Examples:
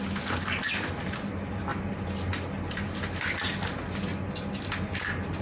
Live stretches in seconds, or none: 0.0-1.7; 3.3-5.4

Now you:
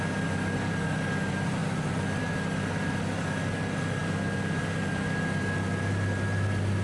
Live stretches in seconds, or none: 0.0-6.8